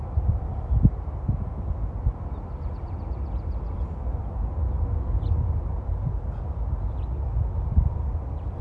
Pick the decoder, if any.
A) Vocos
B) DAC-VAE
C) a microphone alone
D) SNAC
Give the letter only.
C